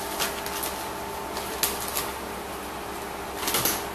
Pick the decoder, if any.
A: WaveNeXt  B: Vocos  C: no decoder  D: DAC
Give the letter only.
C